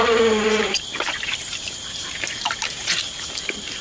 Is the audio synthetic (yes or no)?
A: yes